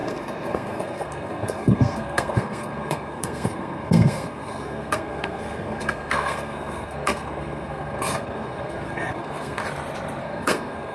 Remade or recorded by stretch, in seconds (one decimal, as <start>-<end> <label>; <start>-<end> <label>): 0.0-9.6 remade; 9.6-10.2 recorded; 10.2-10.9 remade